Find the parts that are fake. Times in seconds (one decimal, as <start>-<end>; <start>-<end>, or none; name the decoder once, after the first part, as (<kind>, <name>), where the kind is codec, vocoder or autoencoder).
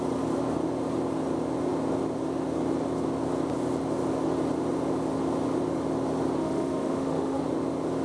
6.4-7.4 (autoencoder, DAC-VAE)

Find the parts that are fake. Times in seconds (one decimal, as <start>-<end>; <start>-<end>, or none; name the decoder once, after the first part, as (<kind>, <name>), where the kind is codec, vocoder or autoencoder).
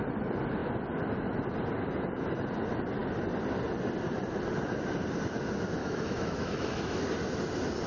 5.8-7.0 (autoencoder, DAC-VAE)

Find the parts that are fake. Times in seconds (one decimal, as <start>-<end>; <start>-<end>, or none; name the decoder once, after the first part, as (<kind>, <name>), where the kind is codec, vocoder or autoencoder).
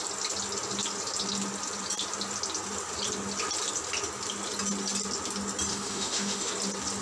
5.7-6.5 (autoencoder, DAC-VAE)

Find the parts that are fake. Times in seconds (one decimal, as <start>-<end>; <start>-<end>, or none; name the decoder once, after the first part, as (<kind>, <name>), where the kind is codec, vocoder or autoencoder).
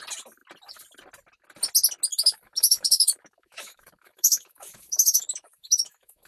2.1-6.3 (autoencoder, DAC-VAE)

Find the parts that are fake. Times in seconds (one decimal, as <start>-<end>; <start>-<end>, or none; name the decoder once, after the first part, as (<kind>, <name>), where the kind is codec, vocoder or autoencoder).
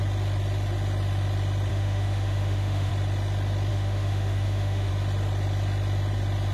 1.7-2.9 (autoencoder, DAC-VAE); 3.7-4.9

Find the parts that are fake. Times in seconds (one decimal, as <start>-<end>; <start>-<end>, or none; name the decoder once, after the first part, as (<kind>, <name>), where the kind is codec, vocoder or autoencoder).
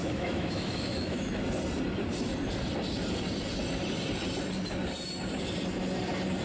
0.0-1.3 (autoencoder, DAC-VAE)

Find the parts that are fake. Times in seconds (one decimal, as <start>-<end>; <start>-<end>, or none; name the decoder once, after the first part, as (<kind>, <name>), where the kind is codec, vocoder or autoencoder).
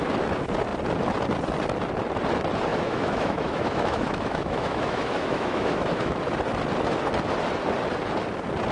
2.7-6.2 (autoencoder, DAC-VAE)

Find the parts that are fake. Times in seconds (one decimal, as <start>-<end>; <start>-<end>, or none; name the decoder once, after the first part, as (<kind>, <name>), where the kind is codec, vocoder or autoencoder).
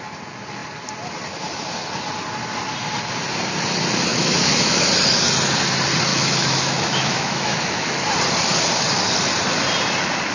4.1-4.8 (autoencoder, DAC-VAE); 6.1-8.1